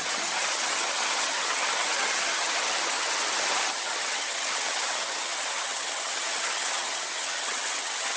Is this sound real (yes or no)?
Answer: no